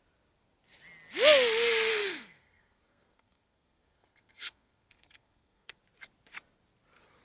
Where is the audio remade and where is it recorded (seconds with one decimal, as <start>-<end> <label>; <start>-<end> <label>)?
0.0-1.9 recorded; 1.9-5.8 remade; 5.8-7.2 recorded